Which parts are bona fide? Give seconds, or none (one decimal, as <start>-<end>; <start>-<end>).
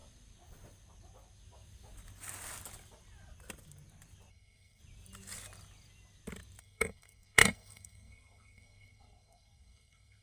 0.0-4.3; 4.8-6.6